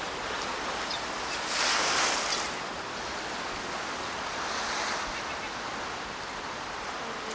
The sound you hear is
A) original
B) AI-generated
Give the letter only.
A